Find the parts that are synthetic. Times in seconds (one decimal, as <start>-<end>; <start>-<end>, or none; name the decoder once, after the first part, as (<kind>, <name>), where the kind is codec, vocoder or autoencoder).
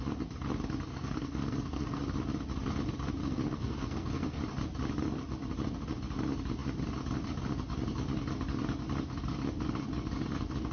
0.9-2.0 (codec, SNAC); 3.2-4.4